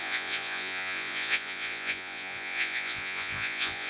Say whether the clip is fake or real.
fake